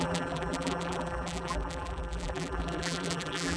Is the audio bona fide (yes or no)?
no